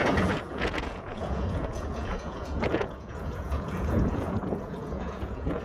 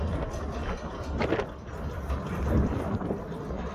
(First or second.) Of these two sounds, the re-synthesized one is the first